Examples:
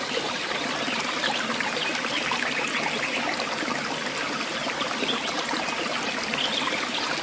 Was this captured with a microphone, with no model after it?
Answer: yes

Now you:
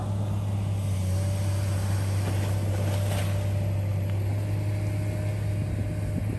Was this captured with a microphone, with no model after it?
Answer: yes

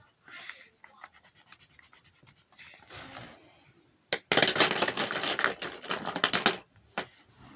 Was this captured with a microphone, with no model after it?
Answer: yes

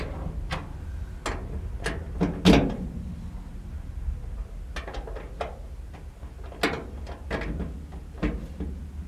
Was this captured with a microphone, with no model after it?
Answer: yes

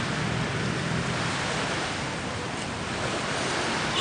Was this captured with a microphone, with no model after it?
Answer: yes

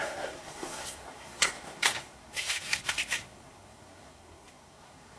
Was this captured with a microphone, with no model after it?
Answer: no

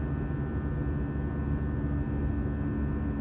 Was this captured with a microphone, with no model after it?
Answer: yes